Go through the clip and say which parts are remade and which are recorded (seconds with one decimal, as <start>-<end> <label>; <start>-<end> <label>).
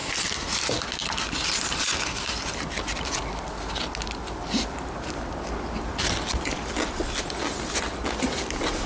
0.0-8.9 recorded